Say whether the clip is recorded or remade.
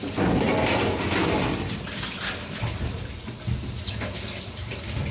recorded